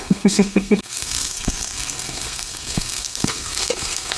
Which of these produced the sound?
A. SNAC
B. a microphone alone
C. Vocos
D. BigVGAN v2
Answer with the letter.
A